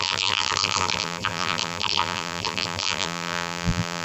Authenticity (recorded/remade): remade